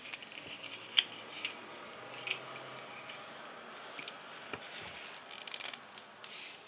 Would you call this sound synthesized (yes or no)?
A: no